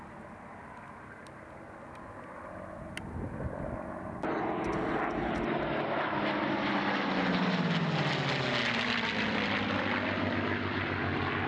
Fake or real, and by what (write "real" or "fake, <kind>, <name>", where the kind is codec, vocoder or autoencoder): real